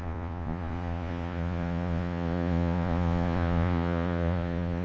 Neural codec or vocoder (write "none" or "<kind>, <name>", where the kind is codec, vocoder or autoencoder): vocoder, Vocos